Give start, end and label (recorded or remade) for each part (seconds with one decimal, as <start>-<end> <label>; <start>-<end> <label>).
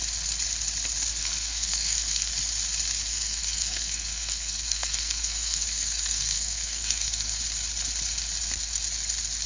0.0-1.2 recorded; 1.2-2.3 remade; 2.3-3.1 recorded; 3.1-7.4 remade; 7.4-9.5 recorded